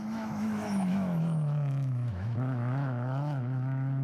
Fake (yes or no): yes